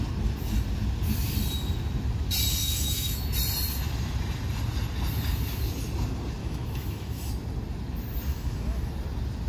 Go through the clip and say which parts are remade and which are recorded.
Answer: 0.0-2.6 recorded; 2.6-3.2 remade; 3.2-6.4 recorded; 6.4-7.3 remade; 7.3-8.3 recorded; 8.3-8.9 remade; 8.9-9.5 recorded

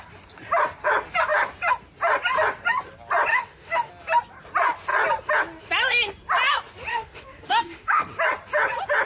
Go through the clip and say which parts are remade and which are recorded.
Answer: 0.0-3.3 recorded; 3.3-3.9 remade; 3.9-6.9 recorded; 6.9-8.0 remade; 8.0-9.1 recorded

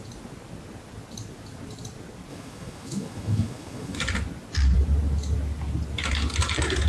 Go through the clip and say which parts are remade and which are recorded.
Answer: 0.0-2.3 recorded; 2.3-4.0 remade; 4.0-6.9 recorded

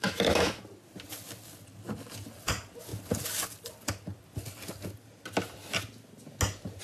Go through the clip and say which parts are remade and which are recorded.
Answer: 0.0-0.6 remade; 0.6-6.8 recorded

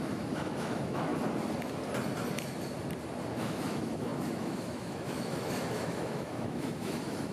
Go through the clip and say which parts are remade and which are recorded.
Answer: 0.0-1.1 remade; 1.1-3.3 recorded; 3.3-7.3 remade

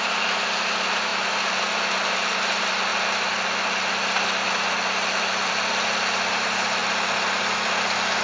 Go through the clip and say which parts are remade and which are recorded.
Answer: 0.0-8.2 recorded